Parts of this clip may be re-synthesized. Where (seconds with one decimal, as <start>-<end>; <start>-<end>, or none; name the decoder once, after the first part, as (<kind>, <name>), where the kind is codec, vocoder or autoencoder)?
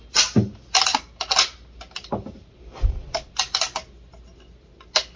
none